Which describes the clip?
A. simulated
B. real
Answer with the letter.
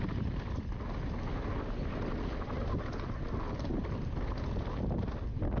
B